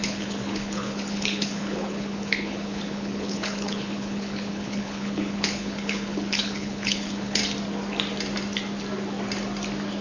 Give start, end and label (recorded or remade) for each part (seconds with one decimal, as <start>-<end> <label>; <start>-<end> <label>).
0.0-7.4 remade; 7.4-10.0 recorded